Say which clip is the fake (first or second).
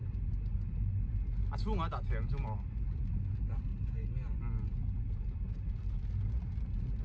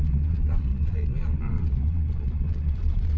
second